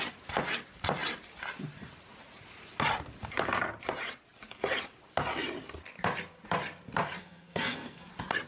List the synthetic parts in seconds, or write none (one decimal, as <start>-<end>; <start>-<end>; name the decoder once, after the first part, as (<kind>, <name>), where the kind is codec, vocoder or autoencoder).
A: 7.2-8.1 (codec, SNAC)